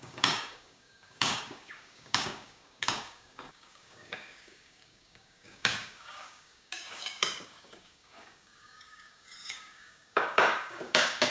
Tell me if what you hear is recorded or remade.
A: remade